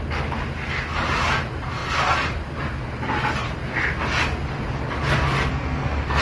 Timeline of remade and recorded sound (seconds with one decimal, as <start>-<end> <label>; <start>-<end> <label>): 0.0-5.5 recorded; 5.5-6.2 remade